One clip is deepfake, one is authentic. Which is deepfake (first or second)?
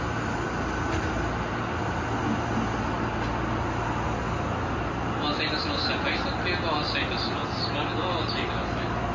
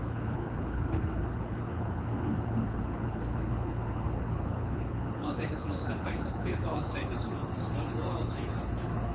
second